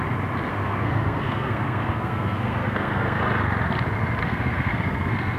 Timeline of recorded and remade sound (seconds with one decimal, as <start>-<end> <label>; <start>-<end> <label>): 0.0-0.5 recorded; 0.5-3.2 remade; 3.2-4.2 recorded; 4.2-5.4 remade